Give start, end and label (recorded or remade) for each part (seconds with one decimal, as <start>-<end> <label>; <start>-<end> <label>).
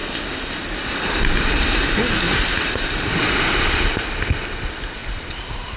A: 0.0-5.8 recorded